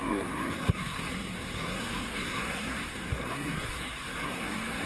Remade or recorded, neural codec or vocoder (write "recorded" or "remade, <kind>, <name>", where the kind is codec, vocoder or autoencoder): remade, codec, SNAC